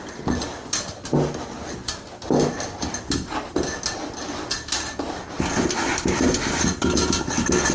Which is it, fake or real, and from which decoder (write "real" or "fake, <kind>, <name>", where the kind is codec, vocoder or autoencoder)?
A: real